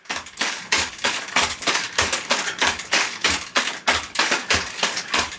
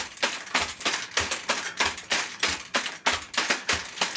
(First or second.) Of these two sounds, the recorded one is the second